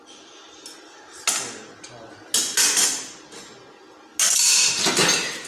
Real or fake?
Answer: real